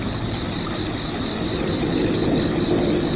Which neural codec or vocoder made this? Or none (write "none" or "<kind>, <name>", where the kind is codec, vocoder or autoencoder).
none